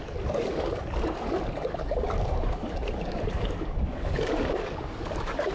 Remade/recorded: remade